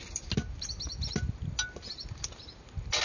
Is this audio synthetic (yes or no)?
no